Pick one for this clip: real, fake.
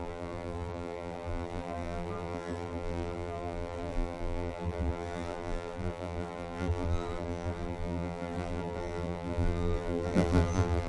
fake